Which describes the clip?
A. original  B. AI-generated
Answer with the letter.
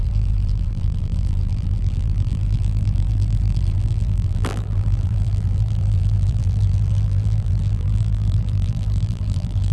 B